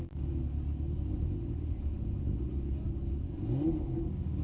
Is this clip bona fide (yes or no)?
yes